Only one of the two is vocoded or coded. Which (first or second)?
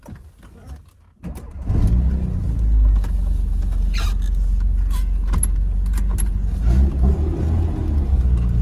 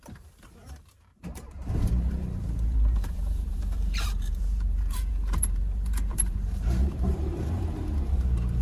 second